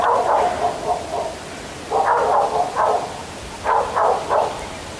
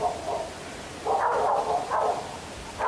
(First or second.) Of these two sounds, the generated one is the second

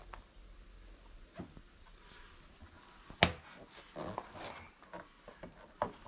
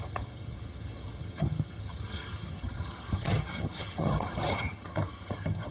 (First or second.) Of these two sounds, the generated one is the second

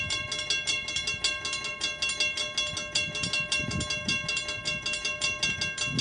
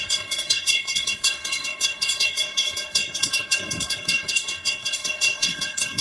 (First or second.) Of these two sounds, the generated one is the second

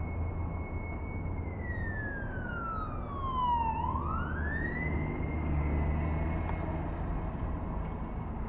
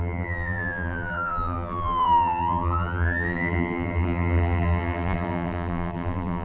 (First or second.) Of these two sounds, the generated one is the second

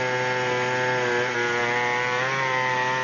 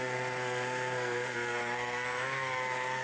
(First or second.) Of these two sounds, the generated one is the second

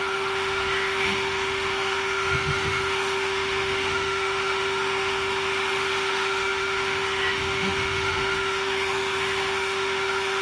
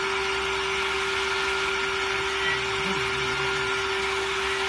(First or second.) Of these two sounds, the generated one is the first